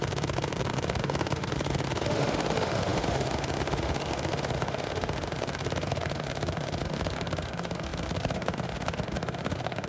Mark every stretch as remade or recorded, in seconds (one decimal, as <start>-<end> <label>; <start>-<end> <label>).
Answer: 0.0-9.9 remade